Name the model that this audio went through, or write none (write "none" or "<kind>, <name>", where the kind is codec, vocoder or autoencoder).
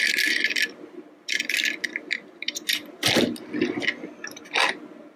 none